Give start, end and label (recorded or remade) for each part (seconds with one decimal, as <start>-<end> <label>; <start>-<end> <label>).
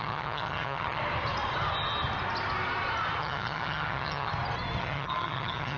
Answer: 0.0-1.0 remade; 1.0-3.2 recorded; 3.2-4.3 remade; 4.3-4.8 recorded; 4.8-5.8 remade